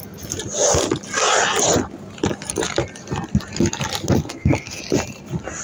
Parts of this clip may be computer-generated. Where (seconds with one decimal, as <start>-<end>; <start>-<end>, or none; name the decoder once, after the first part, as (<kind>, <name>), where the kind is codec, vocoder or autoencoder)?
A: 4.2-4.8 (codec, SNAC)